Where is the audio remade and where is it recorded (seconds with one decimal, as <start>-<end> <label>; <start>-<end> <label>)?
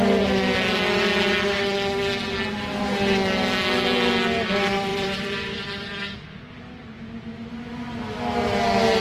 0.0-4.9 recorded; 4.9-6.4 remade; 6.4-9.0 recorded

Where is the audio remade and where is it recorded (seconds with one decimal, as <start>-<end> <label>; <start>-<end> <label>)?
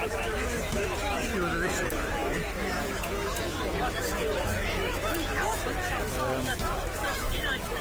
0.0-7.8 remade